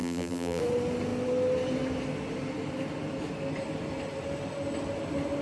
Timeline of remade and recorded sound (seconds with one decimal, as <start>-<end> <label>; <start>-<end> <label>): 0.0-0.6 remade; 0.6-5.4 recorded